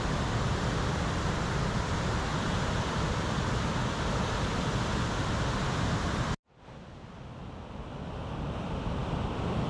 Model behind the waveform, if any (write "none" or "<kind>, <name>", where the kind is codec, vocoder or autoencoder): none